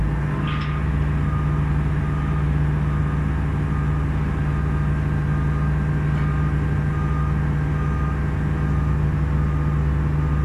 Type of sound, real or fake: real